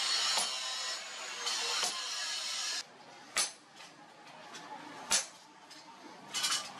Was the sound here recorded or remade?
recorded